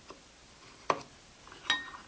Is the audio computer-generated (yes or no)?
no